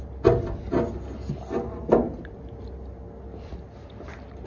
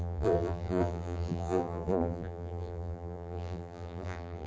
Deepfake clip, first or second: second